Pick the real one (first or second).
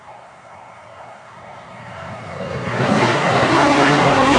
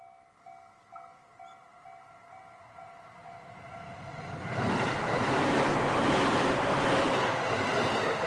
second